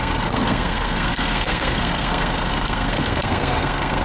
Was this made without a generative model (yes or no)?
no